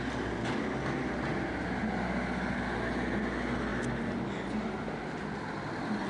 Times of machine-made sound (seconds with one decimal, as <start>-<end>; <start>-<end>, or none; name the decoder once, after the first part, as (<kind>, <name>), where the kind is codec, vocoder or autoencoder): none